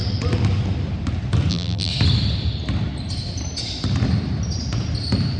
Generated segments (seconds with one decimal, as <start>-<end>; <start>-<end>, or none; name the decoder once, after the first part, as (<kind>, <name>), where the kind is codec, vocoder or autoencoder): 1.5-1.9 (vocoder, BigVGAN v2)